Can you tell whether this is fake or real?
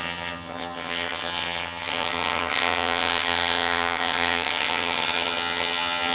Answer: fake